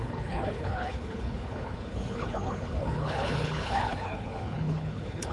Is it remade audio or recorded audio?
remade